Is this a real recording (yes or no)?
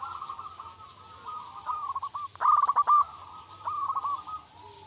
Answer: yes